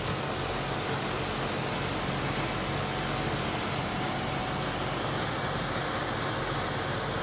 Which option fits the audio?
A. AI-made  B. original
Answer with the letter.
B